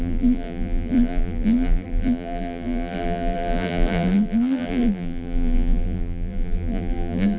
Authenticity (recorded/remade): remade